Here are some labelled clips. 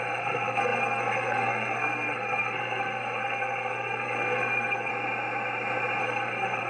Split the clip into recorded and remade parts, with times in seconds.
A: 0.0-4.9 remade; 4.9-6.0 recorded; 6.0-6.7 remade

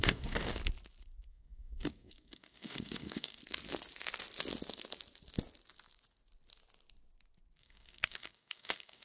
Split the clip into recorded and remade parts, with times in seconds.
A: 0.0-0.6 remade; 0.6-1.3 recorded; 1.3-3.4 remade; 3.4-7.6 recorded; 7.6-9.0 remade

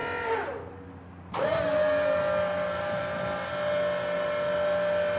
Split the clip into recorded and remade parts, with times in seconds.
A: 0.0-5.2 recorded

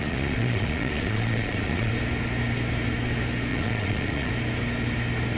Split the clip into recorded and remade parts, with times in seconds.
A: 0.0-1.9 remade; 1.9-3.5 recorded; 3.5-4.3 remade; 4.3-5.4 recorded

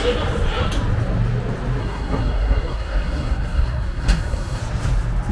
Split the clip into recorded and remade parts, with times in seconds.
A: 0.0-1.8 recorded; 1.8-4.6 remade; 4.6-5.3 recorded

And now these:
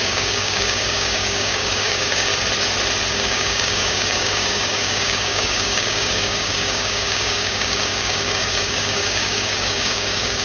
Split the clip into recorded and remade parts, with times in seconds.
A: 0.0-2.3 remade; 2.3-3.1 recorded; 3.1-10.4 remade